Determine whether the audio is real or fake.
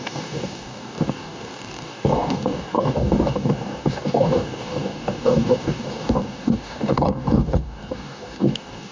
fake